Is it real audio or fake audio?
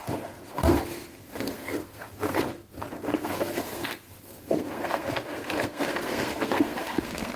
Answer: fake